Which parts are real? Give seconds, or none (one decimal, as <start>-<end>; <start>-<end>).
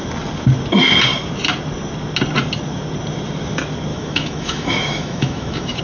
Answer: 0.0-3.9